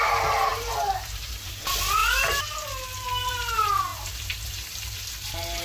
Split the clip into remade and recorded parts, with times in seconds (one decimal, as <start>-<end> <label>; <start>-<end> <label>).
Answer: 0.0-2.0 remade; 2.0-3.3 recorded; 3.3-5.6 remade